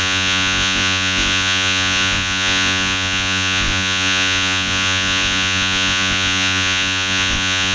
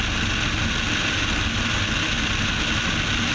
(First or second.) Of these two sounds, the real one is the second